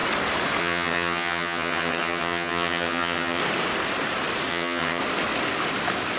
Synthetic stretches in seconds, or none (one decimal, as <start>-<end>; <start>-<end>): 0.6-3.4; 4.5-5.0